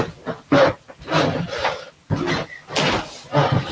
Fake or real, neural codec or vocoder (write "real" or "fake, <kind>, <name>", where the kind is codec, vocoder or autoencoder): real